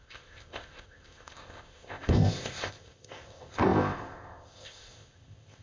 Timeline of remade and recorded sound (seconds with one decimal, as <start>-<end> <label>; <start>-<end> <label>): 0.0-5.6 remade